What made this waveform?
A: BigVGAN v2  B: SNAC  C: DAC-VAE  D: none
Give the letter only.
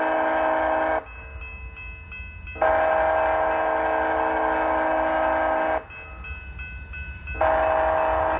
D